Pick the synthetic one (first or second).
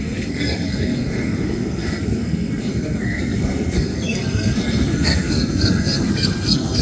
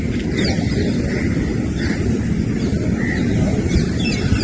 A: first